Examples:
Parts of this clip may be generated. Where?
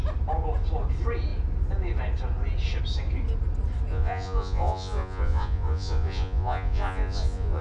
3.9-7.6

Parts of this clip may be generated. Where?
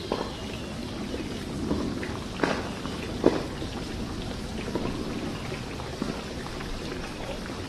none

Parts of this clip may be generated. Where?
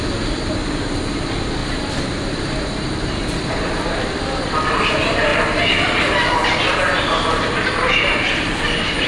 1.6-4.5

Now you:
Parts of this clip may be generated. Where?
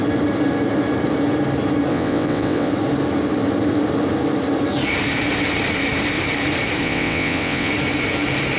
1.9-2.7; 6.8-7.7